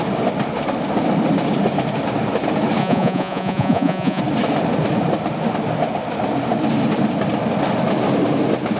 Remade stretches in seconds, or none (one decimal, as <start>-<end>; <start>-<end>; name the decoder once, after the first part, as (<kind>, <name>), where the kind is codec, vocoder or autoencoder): 2.8-4.2 (vocoder, Vocos)